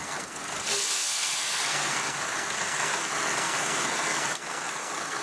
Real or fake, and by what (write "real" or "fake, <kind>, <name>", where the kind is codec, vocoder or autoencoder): fake, codec, SNAC